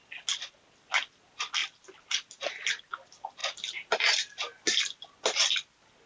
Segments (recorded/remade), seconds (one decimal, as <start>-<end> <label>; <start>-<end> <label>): 0.0-6.1 recorded